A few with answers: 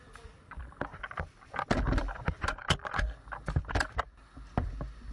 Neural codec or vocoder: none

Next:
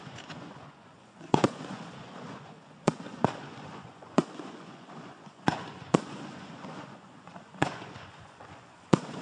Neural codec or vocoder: vocoder, Vocos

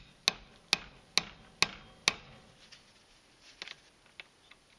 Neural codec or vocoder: none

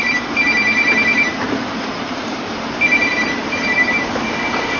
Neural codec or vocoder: vocoder, BigVGAN v2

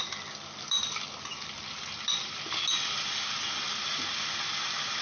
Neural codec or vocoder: none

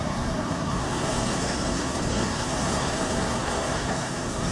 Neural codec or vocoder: codec, SNAC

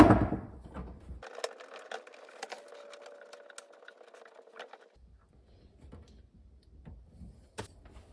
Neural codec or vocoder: none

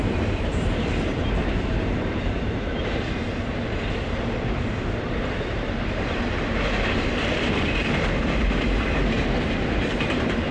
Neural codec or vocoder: vocoder, BigVGAN v2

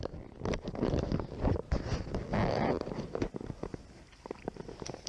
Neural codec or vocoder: none